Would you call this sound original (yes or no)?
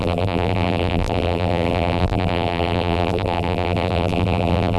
no